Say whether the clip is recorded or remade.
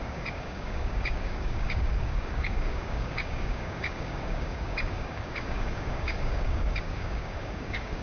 remade